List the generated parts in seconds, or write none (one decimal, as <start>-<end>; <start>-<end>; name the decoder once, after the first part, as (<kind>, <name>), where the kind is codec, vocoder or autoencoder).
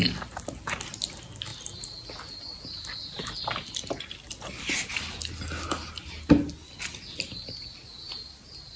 none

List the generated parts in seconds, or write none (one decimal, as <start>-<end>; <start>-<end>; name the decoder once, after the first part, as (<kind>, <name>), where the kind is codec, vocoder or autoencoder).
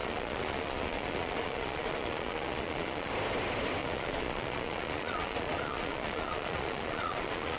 0.0-3.1 (vocoder, Vocos); 3.8-7.6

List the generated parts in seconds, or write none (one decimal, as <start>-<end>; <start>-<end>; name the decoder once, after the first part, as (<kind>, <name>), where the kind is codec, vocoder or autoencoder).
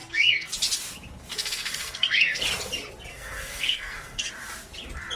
0.0-0.5 (codec, SNAC); 1.3-2.4; 3.1-4.3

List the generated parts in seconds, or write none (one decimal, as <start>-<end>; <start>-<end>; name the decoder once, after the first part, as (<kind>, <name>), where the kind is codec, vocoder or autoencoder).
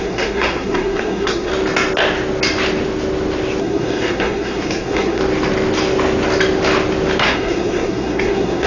0.0-1.5 (codec, SNAC); 3.6-5.2; 7.2-8.7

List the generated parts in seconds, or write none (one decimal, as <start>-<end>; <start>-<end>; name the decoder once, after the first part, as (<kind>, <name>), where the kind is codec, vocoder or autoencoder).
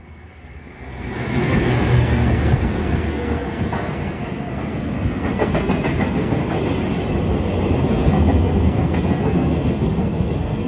0.0-6.4 (codec, SNAC); 7.8-10.7